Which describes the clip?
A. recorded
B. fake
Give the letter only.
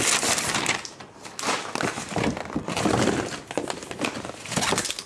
A